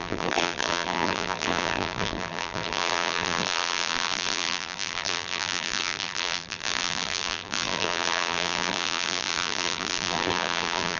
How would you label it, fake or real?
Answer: fake